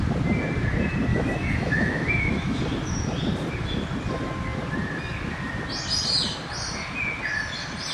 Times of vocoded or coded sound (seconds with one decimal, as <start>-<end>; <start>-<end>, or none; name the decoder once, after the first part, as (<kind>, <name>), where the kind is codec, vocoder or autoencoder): 1.1-2.6 (autoencoder, DAC-VAE)

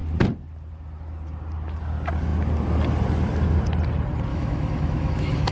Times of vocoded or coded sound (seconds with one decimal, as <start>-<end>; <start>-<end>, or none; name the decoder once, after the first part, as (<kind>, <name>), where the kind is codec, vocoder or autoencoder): 4.3-5.5 (autoencoder, DAC-VAE)

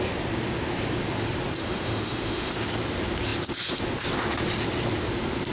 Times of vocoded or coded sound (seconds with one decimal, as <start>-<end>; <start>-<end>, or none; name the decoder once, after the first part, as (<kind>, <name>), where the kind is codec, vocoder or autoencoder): 1.6-2.5 (autoencoder, DAC-VAE)

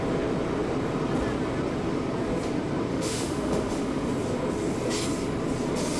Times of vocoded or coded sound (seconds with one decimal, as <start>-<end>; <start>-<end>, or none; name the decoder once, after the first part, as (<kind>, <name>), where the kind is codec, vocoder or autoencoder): 2.9-4.1 (autoencoder, DAC-VAE)

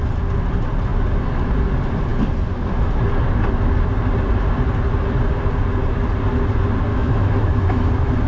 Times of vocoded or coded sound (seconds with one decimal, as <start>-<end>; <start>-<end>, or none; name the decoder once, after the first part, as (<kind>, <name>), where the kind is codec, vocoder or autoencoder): 6.9-7.9 (autoencoder, DAC-VAE)

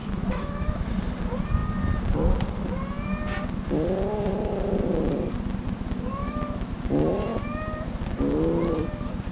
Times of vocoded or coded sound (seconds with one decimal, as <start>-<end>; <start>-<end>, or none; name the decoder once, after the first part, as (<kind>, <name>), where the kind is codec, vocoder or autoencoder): 0.0-0.9 (autoencoder, DAC-VAE); 6.2-6.7

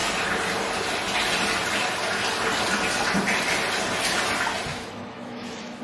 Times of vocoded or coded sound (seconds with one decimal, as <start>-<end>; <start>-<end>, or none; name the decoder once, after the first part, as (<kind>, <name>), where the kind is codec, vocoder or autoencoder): 4.7-5.8 (autoencoder, DAC-VAE)

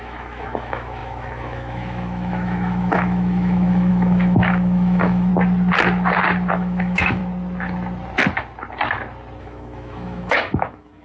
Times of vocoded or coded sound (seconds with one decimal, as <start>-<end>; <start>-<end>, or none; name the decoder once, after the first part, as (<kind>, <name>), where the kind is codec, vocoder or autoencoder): 0.0-5.3 (autoencoder, DAC-VAE); 6.5-7.2; 9.4-11.0